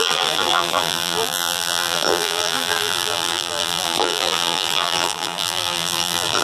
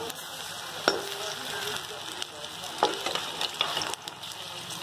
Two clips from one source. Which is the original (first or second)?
second